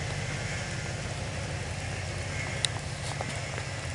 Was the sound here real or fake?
real